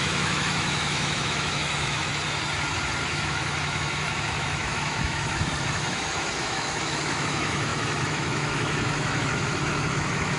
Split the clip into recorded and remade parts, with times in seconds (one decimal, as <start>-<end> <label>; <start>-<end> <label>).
0.0-2.1 remade; 2.1-3.1 recorded; 3.1-10.4 remade